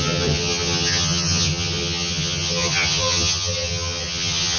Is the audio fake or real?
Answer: fake